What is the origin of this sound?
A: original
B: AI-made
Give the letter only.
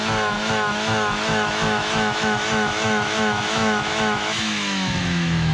B